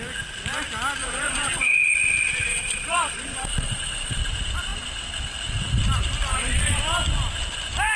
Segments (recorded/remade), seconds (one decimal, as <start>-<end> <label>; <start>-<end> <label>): 0.0-1.0 recorded; 1.0-1.9 remade; 1.9-2.5 recorded; 2.5-4.2 remade; 4.2-6.3 recorded; 6.3-6.8 remade; 6.8-8.0 recorded